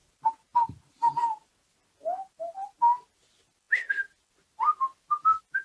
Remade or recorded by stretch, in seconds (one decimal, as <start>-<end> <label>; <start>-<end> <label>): 0.0-5.6 recorded